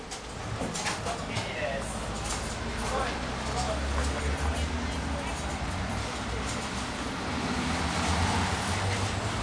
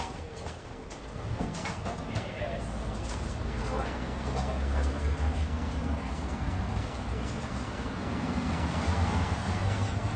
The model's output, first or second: second